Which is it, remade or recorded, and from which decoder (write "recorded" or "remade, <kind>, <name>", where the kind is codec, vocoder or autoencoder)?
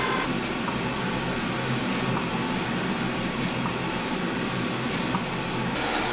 recorded